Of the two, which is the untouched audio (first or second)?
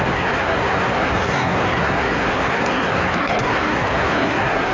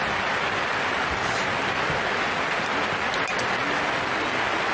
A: second